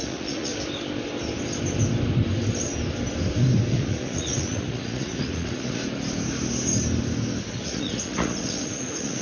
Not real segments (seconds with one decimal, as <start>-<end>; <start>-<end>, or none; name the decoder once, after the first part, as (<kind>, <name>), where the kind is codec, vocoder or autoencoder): 0.0-0.5 (vocoder, Vocos); 3.7-5.8; 7.5-9.2